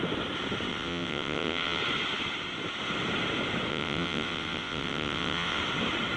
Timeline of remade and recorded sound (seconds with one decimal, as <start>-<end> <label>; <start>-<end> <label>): 0.0-0.7 recorded; 0.7-1.8 remade; 1.8-3.7 recorded; 3.7-5.6 remade; 5.6-6.2 recorded

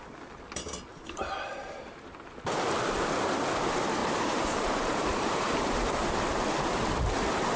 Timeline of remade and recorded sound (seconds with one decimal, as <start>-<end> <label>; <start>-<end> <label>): 0.0-0.9 recorded; 0.9-1.8 remade; 1.8-4.0 recorded; 4.0-6.2 remade; 6.2-7.6 recorded

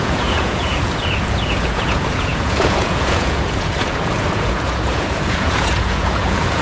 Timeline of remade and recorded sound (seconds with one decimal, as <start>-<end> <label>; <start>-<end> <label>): 0.0-6.6 remade

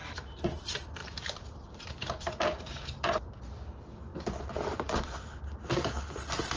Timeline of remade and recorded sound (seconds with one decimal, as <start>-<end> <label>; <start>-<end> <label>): 0.0-0.6 remade; 0.6-1.0 recorded; 1.0-3.3 remade; 3.3-6.6 recorded